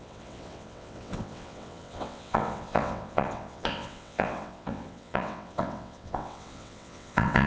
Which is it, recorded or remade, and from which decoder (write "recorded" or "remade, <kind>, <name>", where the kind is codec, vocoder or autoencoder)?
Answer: remade, vocoder, WaveNeXt